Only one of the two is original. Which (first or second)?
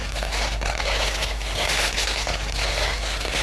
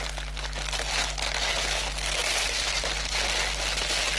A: second